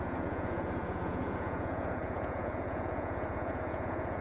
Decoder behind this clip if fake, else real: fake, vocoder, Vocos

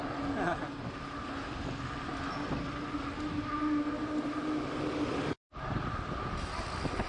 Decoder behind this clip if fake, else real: real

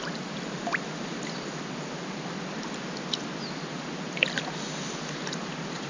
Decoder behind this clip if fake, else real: real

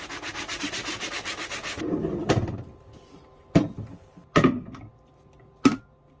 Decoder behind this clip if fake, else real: real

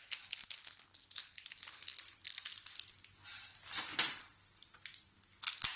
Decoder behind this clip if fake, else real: real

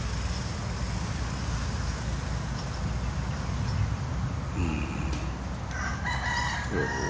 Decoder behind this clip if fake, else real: real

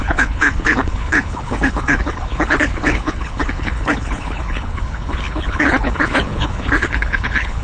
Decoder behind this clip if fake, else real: fake, codec, HILCodec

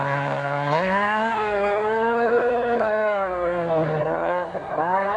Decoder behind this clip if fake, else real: fake, codec, SNAC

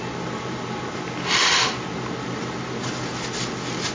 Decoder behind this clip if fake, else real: real